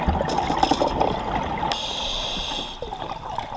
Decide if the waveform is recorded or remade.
recorded